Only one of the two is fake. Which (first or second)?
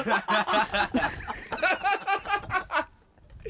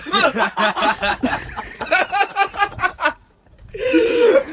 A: second